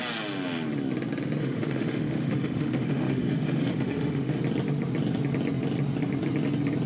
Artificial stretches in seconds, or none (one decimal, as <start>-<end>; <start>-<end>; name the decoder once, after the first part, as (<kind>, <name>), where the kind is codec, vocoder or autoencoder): 1.4-4.4 (autoencoder, DAC-VAE)